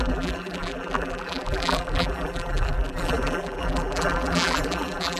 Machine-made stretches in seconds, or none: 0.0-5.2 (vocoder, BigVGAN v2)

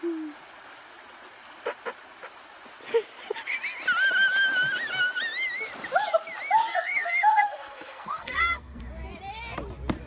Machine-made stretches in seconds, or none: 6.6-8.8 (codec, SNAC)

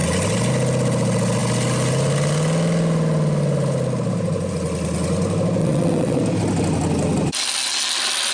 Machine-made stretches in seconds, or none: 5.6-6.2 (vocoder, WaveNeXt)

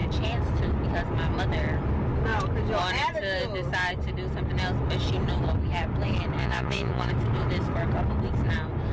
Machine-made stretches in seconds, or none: 6.4-7.1 (vocoder, Vocos)